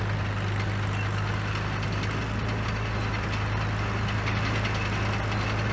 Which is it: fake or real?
real